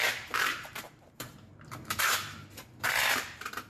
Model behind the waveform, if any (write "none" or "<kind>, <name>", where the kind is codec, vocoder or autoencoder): vocoder, BigVGAN v2